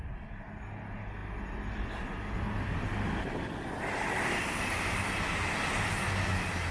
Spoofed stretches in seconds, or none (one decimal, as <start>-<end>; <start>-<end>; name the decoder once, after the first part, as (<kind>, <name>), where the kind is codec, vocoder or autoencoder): none

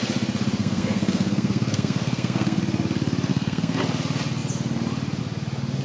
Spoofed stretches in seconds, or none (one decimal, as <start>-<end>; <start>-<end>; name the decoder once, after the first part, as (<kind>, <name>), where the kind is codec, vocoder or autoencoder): 0.6-2.6 (codec, SNAC); 3.3-3.8

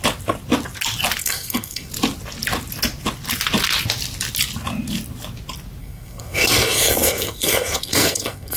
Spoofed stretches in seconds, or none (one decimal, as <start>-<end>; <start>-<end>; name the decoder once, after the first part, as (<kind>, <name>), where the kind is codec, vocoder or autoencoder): 1.2-1.9 (codec, SNAC); 5.8-8.6

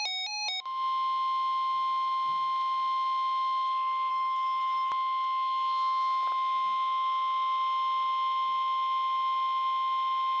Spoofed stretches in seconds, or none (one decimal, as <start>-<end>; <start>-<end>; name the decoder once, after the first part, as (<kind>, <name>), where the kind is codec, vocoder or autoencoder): 4.1-4.9 (codec, SNAC)

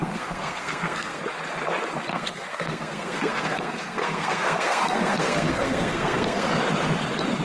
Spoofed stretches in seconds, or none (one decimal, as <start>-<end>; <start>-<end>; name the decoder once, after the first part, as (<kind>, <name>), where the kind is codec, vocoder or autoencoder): 0.0-1.2 (codec, SNAC); 2.1-6.5

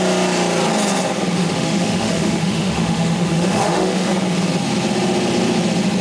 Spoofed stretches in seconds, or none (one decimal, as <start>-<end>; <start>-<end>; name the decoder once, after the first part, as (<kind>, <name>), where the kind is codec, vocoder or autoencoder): 1.4-4.1 (autoencoder, DAC-VAE)

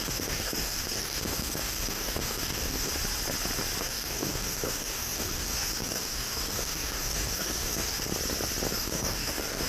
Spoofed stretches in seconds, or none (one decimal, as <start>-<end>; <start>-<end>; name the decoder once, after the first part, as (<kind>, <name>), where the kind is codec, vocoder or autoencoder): 0.0-2.9 (codec, DAC); 3.8-8.1; 8.7-9.7